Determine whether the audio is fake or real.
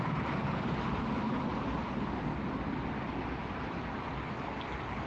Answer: real